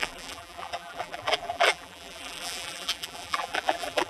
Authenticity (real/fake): fake